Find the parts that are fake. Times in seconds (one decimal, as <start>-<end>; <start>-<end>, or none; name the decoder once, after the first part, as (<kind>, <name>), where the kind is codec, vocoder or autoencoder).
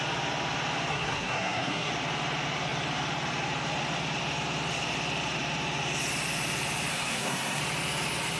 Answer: 0.9-1.9 (codec, SNAC); 6.9-7.6